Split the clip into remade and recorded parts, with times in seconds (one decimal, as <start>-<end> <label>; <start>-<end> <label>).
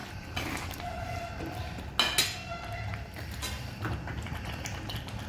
0.0-5.3 recorded